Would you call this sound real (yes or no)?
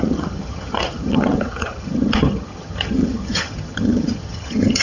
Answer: no